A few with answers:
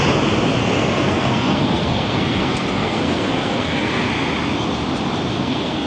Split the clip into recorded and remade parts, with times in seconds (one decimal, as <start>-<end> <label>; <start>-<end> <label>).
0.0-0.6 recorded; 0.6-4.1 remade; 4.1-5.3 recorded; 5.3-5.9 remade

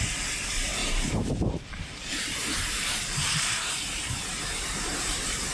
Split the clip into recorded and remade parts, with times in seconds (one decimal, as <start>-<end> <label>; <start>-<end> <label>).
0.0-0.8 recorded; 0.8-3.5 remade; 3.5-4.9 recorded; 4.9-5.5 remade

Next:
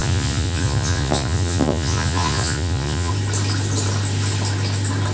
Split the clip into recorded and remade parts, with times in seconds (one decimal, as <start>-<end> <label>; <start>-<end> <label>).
0.0-3.1 remade; 3.1-5.1 recorded